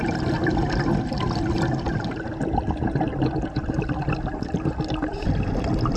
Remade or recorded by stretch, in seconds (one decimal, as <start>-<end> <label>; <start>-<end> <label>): 0.0-6.0 recorded